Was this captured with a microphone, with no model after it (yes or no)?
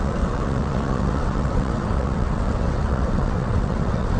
no